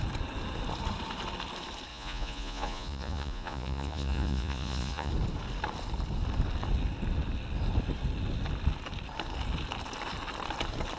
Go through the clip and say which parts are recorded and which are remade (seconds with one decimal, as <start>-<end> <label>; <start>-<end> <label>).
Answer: 0.0-1.9 recorded; 1.9-5.1 remade; 5.1-11.0 recorded